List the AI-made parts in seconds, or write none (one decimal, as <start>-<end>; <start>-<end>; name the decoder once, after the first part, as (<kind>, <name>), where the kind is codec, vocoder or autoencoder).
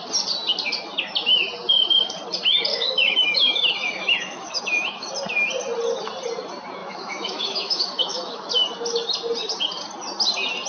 2.7-5.1 (autoencoder, DAC-VAE); 6.8-8.5